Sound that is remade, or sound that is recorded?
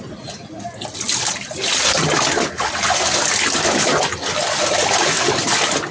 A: recorded